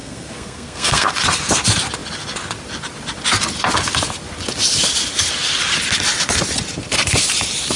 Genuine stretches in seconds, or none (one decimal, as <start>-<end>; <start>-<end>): 1.1-7.8